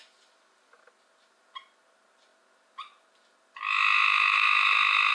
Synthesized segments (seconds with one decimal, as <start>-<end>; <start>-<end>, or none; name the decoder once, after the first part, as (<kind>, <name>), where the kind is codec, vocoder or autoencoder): none